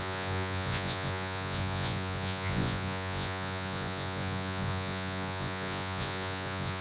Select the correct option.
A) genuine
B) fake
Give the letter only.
B